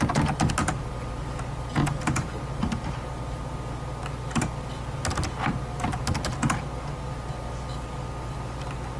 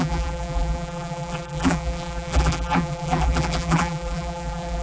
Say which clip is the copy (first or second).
second